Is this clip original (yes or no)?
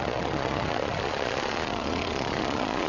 no